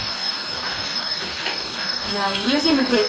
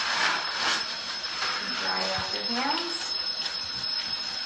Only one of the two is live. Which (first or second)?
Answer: second